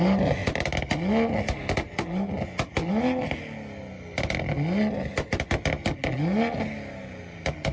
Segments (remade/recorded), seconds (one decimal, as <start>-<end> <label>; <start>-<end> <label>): 0.0-7.7 recorded